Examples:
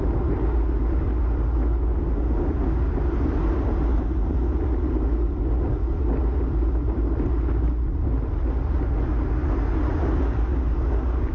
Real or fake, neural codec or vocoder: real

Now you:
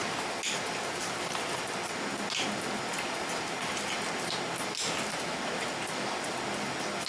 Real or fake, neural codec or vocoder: real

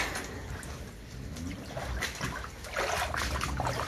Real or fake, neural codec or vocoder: real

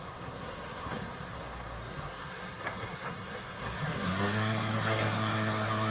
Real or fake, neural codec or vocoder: fake, codec, SNAC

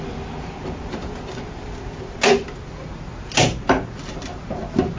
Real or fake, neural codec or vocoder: real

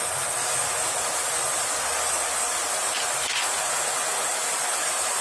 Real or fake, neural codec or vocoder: real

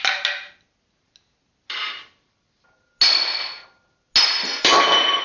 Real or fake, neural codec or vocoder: real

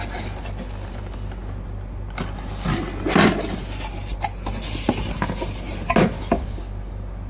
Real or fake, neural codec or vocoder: real